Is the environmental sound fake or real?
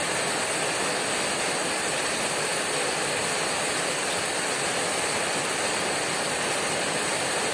real